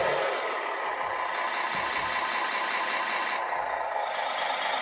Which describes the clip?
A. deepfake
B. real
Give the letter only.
B